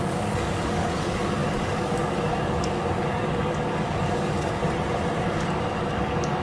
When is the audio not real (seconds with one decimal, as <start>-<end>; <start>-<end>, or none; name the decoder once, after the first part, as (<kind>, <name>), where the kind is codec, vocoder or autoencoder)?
0.0-4.6 (codec, DAC); 5.2-6.4